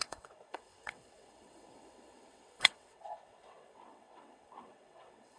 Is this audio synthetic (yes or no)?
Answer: yes